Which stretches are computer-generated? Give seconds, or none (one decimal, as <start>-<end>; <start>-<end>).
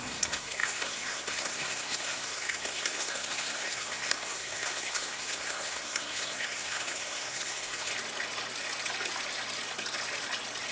0.0-7.9